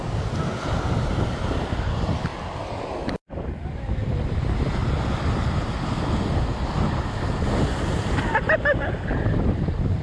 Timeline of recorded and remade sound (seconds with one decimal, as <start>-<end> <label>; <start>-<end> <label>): 0.0-2.3 remade; 2.3-3.5 recorded; 3.5-4.8 remade; 4.8-6.0 recorded; 6.0-6.5 remade; 6.5-7.8 recorded; 7.8-10.0 remade